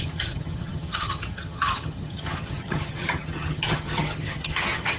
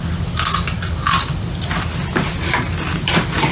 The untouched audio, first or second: second